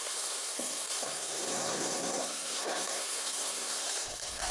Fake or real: fake